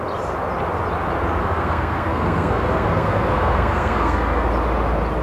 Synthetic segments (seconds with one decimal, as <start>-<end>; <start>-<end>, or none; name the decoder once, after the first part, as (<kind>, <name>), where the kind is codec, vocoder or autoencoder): 1.4-4.5 (codec, SNAC)